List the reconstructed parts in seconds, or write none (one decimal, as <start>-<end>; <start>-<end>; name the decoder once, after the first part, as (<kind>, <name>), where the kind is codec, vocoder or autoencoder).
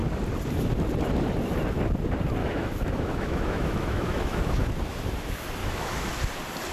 2.4-4.7 (autoencoder, DAC-VAE); 5.6-6.1